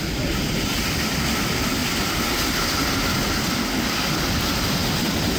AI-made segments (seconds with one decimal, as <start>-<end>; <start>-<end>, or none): none